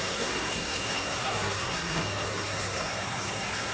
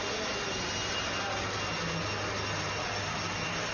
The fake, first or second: first